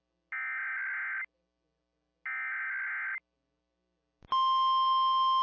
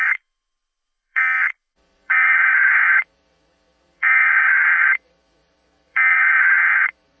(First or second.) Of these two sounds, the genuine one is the first